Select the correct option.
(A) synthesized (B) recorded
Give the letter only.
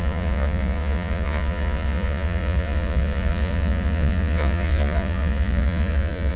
A